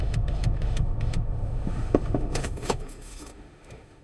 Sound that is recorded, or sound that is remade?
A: remade